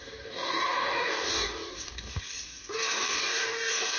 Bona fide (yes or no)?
no